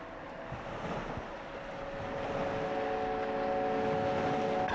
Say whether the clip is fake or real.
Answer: real